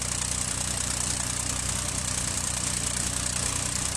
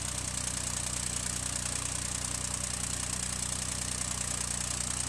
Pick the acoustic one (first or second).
second